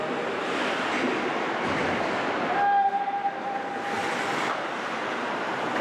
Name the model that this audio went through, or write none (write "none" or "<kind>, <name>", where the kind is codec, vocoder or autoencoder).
none